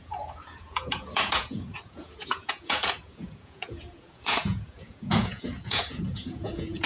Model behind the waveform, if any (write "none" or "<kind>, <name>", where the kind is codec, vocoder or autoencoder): vocoder, Vocos